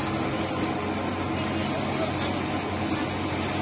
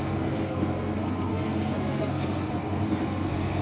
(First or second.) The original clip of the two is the first